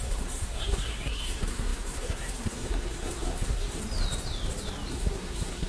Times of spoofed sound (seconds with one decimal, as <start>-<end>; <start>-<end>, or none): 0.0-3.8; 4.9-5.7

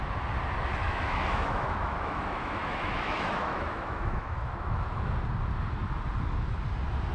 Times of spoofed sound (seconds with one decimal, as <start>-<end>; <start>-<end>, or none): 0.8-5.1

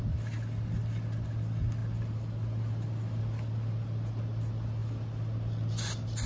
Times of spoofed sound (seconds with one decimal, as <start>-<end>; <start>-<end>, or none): none

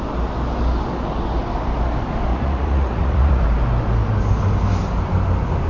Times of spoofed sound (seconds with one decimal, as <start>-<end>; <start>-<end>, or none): 2.3-3.4

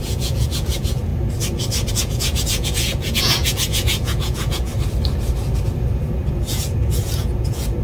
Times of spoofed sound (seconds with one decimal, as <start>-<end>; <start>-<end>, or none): 0.0-1.1; 1.9-4.7; 6.3-7.8